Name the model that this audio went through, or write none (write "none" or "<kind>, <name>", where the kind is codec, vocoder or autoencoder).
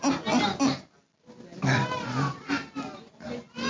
none